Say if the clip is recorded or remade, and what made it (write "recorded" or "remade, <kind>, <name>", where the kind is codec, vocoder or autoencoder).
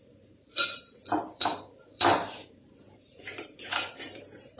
remade, vocoder, BigVGAN v2